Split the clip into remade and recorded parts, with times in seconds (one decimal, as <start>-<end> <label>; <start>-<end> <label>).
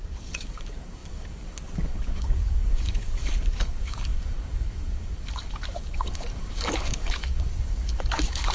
0.0-8.5 remade